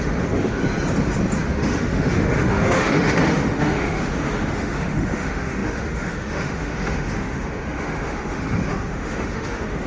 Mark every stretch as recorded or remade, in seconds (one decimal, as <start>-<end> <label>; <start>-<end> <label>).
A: 0.0-0.6 remade; 0.6-1.5 recorded; 1.5-9.9 remade